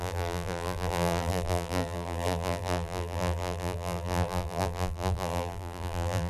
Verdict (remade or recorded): remade